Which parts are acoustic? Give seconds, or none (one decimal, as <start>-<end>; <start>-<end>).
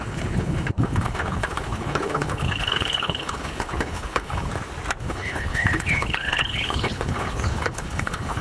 4.5-5.0